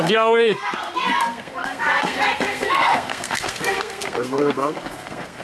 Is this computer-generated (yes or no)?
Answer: yes